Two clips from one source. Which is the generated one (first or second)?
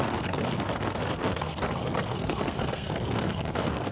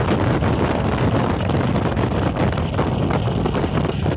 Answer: first